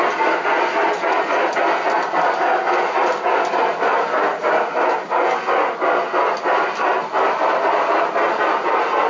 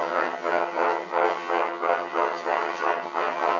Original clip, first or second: first